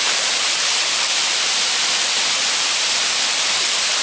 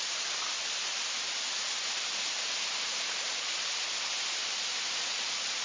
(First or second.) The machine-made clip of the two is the first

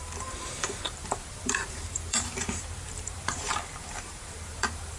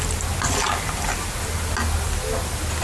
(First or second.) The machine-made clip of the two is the first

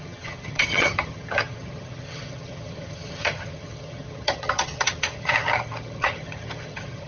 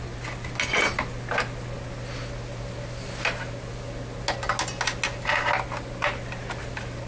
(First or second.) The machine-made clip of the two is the first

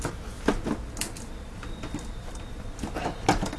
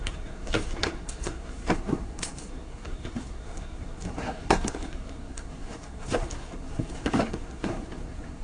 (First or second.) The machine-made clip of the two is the second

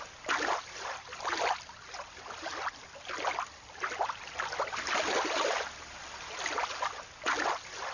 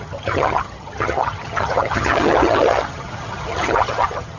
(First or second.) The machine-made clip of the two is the second